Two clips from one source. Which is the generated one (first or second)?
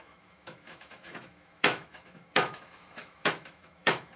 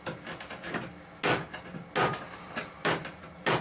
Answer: first